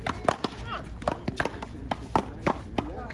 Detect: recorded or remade recorded